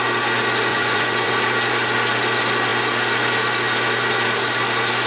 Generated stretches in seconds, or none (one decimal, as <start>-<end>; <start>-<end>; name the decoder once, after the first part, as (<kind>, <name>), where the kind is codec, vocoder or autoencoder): 0.7-1.3 (vocoder, Vocos)